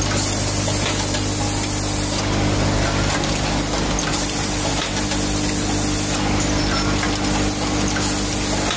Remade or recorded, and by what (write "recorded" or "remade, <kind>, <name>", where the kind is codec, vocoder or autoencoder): recorded